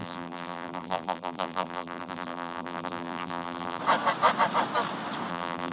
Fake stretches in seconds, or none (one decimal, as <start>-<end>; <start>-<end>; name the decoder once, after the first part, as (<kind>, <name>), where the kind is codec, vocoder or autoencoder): 0.0-3.8 (vocoder, BigVGAN v2); 5.3-5.7